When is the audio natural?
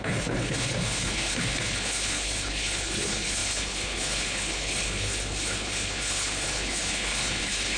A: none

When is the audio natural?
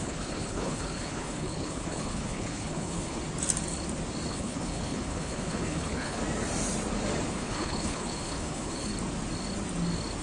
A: 3.2-4.3; 6.2-7.3; 8.9-10.2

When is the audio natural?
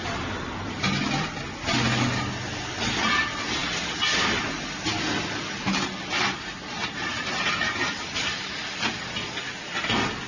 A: 0.0-10.3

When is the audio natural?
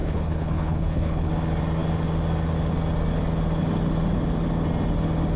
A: 1.3-5.4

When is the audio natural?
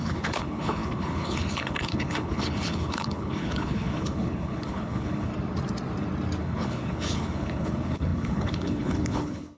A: 5.3-6.4